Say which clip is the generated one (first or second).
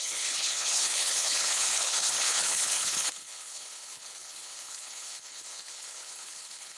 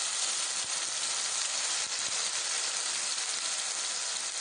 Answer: first